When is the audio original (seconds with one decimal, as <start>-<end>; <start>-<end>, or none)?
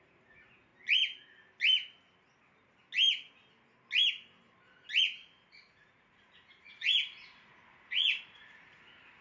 0.7-5.0